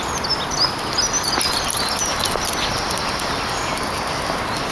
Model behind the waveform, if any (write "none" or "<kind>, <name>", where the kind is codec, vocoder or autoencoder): none